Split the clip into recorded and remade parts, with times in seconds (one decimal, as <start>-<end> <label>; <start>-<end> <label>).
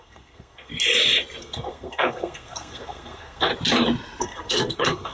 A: 0.0-0.7 remade; 0.7-1.4 recorded; 1.4-3.5 remade; 3.5-4.2 recorded; 4.2-5.1 remade